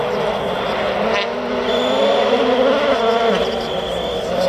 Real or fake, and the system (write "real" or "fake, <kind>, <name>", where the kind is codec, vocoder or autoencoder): real